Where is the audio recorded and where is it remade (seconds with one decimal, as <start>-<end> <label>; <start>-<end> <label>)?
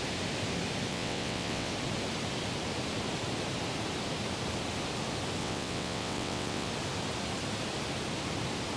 0.0-0.9 recorded; 0.9-1.7 remade; 1.7-5.4 recorded; 5.4-6.7 remade; 6.7-8.8 recorded